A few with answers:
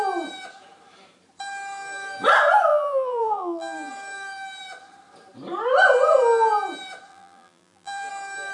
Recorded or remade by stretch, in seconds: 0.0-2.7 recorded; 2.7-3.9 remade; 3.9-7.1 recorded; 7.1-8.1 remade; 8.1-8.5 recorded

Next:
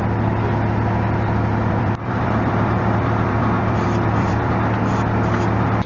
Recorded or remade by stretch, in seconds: 0.0-1.5 recorded; 1.5-4.5 remade; 4.5-5.9 recorded

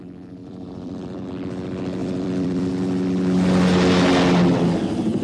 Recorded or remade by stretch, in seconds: 0.0-0.4 recorded; 0.4-1.2 remade; 1.2-2.0 recorded; 2.0-2.7 remade; 2.7-5.2 recorded

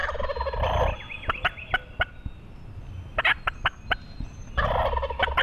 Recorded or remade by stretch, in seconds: 0.0-5.4 recorded

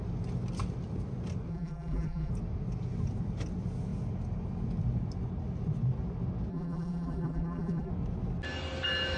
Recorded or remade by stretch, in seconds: 0.0-1.5 recorded; 1.5-2.3 remade; 2.3-6.5 recorded; 6.5-7.9 remade; 7.9-9.2 recorded

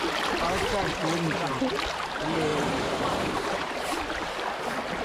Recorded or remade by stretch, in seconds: 0.0-2.5 recorded; 2.5-4.3 remade; 4.3-5.0 recorded